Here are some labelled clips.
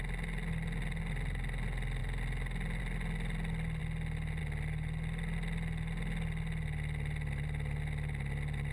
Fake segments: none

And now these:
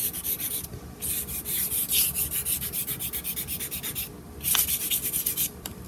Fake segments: 0.0-1.8; 5.3-5.9